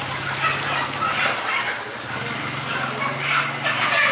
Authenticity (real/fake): real